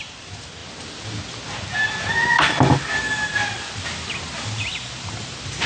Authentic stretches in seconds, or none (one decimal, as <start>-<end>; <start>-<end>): 0.0-5.7